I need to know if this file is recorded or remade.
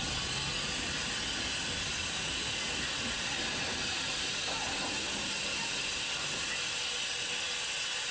recorded